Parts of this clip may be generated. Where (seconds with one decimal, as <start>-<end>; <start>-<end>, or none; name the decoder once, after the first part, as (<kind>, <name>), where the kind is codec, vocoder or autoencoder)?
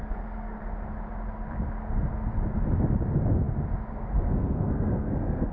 0.0-0.6 (codec, SNAC); 3.9-5.5